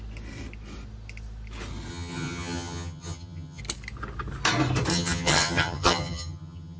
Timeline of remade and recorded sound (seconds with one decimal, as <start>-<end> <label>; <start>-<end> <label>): 0.0-1.9 recorded; 1.9-3.6 remade; 3.6-4.9 recorded; 4.9-6.8 remade